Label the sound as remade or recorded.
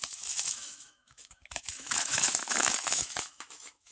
remade